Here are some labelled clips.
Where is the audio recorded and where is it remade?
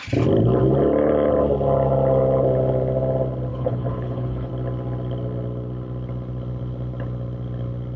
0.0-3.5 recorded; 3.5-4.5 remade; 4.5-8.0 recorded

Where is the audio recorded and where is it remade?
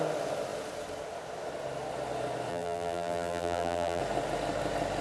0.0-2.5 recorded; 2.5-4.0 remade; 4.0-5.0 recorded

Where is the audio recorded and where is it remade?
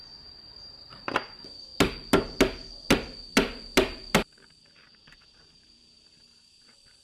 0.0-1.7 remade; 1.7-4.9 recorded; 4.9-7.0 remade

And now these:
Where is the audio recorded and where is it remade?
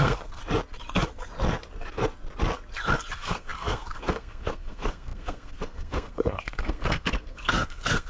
0.0-0.4 remade; 0.4-3.1 recorded; 3.1-8.1 remade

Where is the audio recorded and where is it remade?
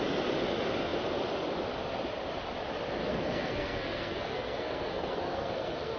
0.0-3.0 recorded; 3.0-6.0 remade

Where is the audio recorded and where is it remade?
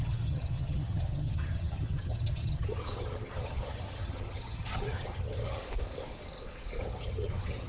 0.0-5.6 remade; 5.6-6.8 recorded; 6.8-7.7 remade